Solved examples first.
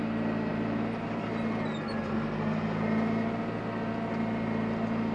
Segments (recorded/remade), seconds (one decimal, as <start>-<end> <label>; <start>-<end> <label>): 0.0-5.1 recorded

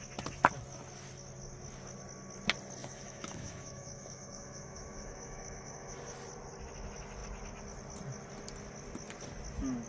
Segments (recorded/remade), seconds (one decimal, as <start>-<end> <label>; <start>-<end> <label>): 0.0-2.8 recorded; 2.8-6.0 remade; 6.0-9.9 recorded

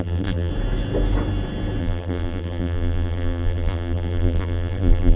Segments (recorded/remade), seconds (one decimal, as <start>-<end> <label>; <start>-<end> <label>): 0.0-0.5 remade; 0.5-1.8 recorded; 1.8-5.2 remade